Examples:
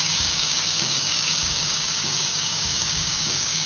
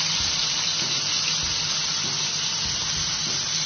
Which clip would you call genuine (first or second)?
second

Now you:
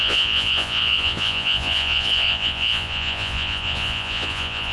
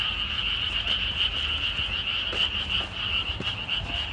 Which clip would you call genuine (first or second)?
second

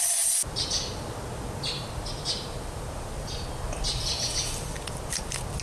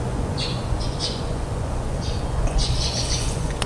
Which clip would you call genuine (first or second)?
first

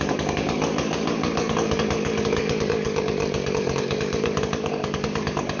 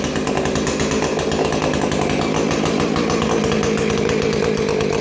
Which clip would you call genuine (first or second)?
second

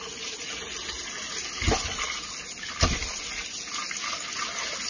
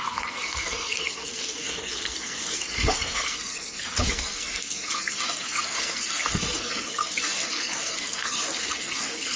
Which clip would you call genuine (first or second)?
first